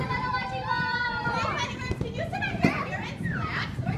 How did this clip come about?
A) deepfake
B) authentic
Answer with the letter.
A